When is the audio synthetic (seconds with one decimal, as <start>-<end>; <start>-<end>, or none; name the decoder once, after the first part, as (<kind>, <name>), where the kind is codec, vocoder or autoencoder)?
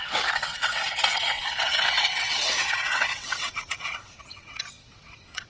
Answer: 0.0-5.5 (vocoder, WaveNeXt)